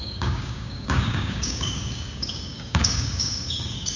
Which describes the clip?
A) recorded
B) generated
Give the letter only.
B